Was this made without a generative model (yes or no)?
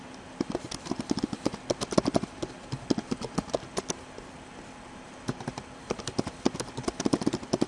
yes